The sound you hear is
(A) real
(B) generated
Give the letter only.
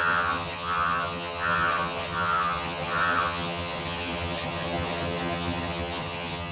B